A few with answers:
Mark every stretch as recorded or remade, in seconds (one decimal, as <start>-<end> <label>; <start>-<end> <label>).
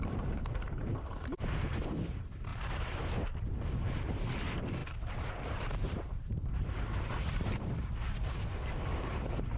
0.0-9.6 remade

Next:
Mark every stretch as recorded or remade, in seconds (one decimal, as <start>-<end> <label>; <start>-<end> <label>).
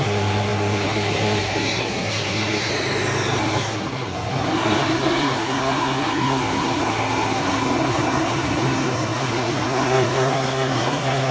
0.0-2.7 remade; 2.7-3.4 recorded; 3.4-11.3 remade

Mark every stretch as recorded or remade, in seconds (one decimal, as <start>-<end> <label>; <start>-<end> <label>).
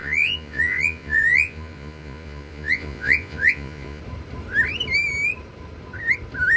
0.0-4.0 remade; 4.0-6.6 recorded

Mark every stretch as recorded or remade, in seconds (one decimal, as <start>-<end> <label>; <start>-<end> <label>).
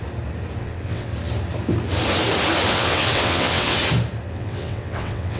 0.0-0.6 recorded; 0.6-1.1 remade; 1.1-2.7 recorded; 2.7-3.8 remade; 3.8-4.3 recorded; 4.3-5.4 remade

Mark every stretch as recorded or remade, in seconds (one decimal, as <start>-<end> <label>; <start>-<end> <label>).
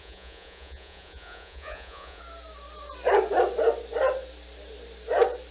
0.0-2.2 remade; 2.2-5.5 recorded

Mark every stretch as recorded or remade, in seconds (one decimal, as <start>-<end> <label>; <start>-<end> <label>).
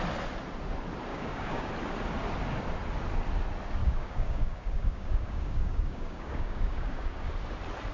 0.0-1.1 recorded; 1.1-1.7 remade; 1.7-3.8 recorded; 3.8-7.3 remade; 7.3-7.9 recorded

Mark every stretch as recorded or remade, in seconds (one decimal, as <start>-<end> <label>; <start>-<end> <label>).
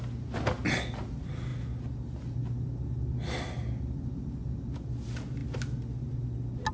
0.0-6.7 recorded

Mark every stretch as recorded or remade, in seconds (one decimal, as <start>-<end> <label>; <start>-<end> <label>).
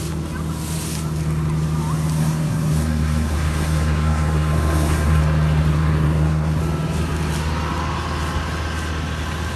0.0-2.2 recorded; 2.2-5.2 remade; 5.2-5.7 recorded; 5.7-6.6 remade; 6.6-9.6 recorded